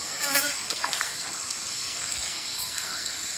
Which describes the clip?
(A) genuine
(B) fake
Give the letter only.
B